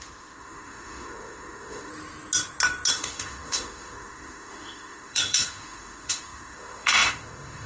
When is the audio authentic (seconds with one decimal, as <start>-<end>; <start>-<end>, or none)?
1.9-2.9